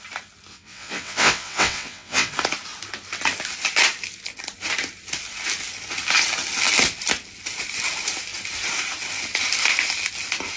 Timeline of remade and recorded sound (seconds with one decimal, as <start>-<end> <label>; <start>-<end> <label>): 0.0-0.5 recorded; 0.5-2.3 remade; 2.3-10.6 recorded

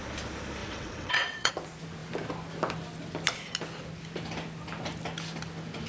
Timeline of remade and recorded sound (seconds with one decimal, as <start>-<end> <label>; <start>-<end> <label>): 0.0-0.6 recorded; 0.6-1.5 remade; 1.5-5.9 recorded

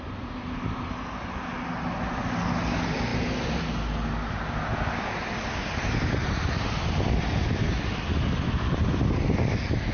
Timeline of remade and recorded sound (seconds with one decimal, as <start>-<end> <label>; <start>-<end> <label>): 0.0-9.9 recorded

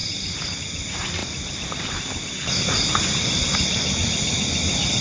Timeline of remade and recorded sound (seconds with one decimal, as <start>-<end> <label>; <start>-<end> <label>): 0.0-5.0 recorded

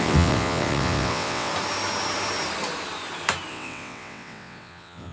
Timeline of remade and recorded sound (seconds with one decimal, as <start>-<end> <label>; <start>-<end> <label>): 0.0-1.5 remade; 1.5-3.5 recorded; 3.5-5.1 remade

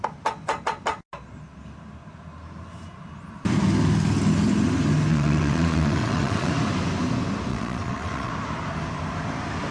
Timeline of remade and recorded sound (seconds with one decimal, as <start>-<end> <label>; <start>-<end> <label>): 0.0-5.1 recorded; 5.1-6.5 remade; 6.5-7.5 recorded; 7.5-8.3 remade; 8.3-9.7 recorded

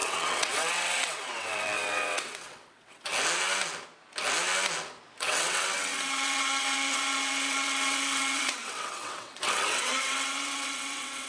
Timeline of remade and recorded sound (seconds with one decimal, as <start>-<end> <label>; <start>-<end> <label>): 0.0-3.1 remade; 3.1-5.2 recorded; 5.2-11.3 remade